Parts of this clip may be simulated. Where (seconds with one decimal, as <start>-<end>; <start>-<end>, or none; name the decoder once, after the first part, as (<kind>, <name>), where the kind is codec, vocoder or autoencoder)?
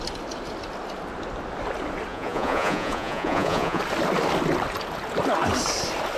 2.1-3.8 (vocoder, Vocos)